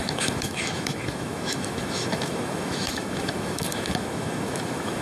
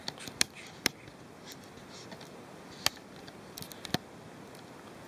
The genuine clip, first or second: second